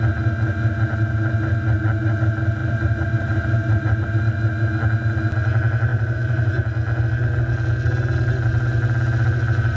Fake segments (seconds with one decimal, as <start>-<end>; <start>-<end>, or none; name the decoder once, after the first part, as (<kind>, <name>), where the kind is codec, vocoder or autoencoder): 2.6-4.2 (vocoder, BigVGAN v2); 5.9-6.5